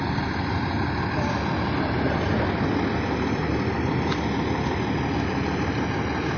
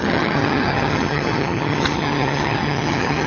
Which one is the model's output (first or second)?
second